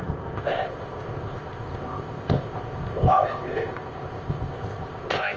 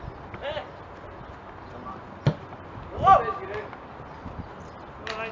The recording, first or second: second